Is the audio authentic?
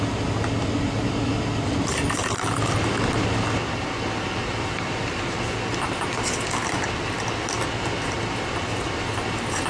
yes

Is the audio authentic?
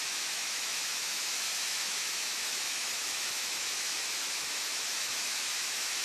no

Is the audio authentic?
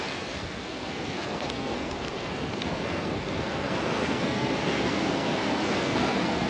no